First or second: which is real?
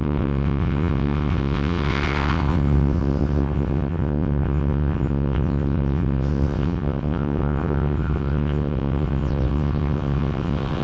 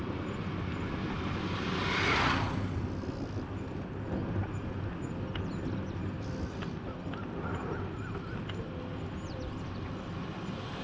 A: second